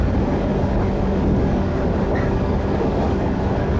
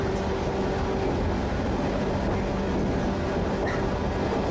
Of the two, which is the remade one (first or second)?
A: first